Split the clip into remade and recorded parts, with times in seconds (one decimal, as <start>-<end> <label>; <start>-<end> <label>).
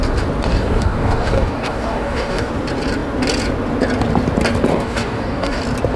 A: 0.0-0.5 recorded; 0.5-2.5 remade; 2.5-4.7 recorded; 4.7-5.6 remade; 5.6-6.0 recorded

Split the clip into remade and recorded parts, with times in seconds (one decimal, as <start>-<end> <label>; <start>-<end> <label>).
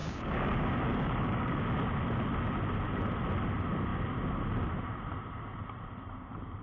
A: 0.0-1.7 remade; 1.7-6.6 recorded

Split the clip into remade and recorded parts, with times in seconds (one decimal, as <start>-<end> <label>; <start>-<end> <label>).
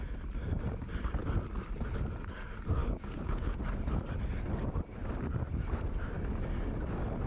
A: 0.0-2.8 recorded; 2.8-3.6 remade; 3.6-7.3 recorded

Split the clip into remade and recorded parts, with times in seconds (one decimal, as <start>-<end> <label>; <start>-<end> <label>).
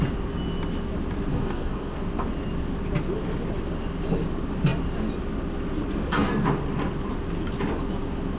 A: 0.0-1.3 recorded; 1.3-2.1 remade; 2.1-8.4 recorded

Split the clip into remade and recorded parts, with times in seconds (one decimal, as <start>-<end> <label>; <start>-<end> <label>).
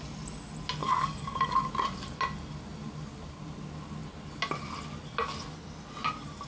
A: 0.0-0.8 recorded; 0.8-1.7 remade; 1.7-6.5 recorded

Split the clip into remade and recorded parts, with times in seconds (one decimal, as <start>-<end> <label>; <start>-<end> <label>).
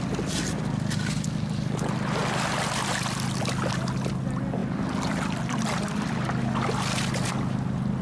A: 0.0-8.0 recorded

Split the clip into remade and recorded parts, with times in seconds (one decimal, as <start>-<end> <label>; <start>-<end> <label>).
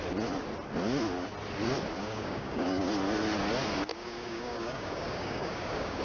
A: 0.0-2.0 recorded; 2.0-2.9 remade; 2.9-3.9 recorded; 3.9-6.0 remade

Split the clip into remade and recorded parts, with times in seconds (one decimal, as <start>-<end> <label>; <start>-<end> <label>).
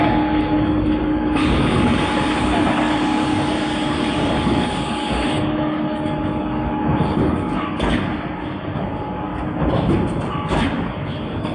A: 0.0-8.1 remade; 8.1-8.6 recorded; 8.6-9.3 remade; 9.3-10.5 recorded; 10.5-11.5 remade